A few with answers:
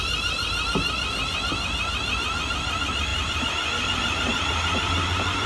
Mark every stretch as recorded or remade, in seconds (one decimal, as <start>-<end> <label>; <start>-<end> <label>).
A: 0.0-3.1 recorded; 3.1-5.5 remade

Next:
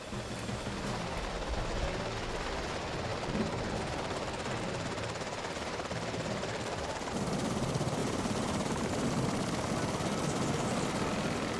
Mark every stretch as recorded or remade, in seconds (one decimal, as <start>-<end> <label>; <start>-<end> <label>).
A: 0.0-3.1 recorded; 3.1-7.1 remade; 7.1-8.0 recorded; 8.0-8.9 remade; 8.9-11.6 recorded

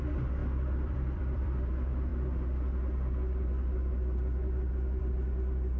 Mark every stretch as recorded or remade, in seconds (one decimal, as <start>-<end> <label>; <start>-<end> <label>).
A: 0.0-0.4 recorded; 0.4-1.7 remade; 1.7-2.1 recorded; 2.1-5.0 remade; 5.0-5.8 recorded

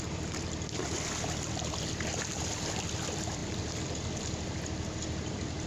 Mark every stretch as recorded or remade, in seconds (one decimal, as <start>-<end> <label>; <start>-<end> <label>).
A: 0.0-3.4 remade; 3.4-4.2 recorded; 4.2-5.7 remade

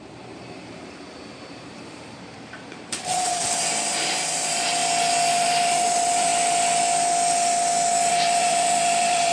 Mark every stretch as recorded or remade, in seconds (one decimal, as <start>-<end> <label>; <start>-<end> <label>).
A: 0.0-4.8 remade; 4.8-5.3 recorded; 5.3-6.3 remade; 6.3-8.1 recorded; 8.1-9.3 remade

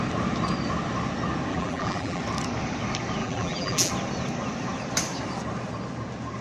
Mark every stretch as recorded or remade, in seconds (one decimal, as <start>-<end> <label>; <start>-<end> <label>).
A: 0.0-1.5 recorded; 1.5-2.2 remade; 2.2-3.2 recorded; 3.2-3.9 remade; 3.9-6.4 recorded

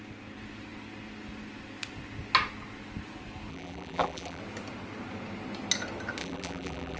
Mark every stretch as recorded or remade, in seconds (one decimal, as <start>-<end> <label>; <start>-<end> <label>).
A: 0.0-3.5 recorded; 3.5-4.4 remade; 4.4-6.2 recorded; 6.2-7.0 remade

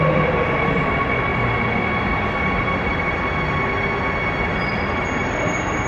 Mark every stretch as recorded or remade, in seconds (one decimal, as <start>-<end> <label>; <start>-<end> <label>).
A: 0.0-1.3 remade; 1.3-4.8 recorded; 4.8-5.9 remade